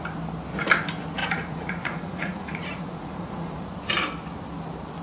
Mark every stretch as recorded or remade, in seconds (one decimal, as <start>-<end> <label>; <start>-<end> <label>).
0.0-1.2 recorded; 1.2-3.6 remade; 3.6-5.0 recorded